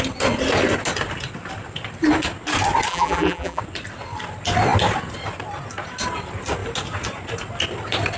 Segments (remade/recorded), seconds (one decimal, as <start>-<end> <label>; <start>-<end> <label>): 0.0-2.9 recorded; 2.9-3.6 remade; 3.6-8.2 recorded